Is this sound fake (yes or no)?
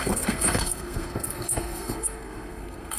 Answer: yes